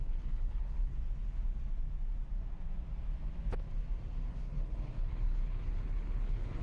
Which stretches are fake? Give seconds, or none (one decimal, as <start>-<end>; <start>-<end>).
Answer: 0.0-0.9; 4.3-6.6